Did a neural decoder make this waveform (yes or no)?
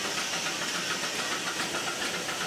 no